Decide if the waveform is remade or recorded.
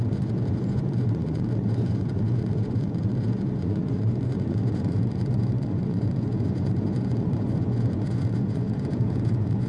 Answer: remade